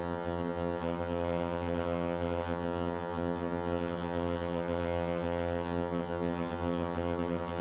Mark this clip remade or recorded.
remade